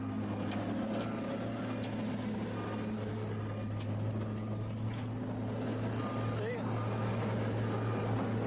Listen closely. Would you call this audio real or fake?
real